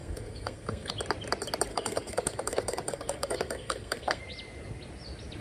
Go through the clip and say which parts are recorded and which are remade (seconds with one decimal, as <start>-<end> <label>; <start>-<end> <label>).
0.0-0.9 remade; 0.9-1.7 recorded; 1.7-4.2 remade; 4.2-5.4 recorded